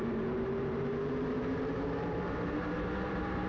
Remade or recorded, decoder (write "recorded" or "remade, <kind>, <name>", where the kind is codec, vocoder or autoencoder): remade, vocoder, BigVGAN v2